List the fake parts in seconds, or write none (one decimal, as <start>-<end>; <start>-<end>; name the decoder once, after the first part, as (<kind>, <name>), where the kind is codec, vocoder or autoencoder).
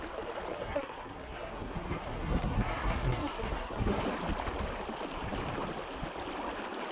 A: 0.5-4.0 (codec, SNAC)